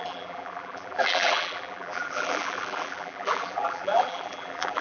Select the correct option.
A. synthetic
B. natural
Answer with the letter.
A